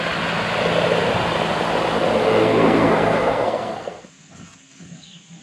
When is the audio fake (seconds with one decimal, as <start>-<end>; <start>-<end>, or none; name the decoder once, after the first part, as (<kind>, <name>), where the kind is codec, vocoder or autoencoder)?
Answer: 2.4-5.4 (codec, SNAC)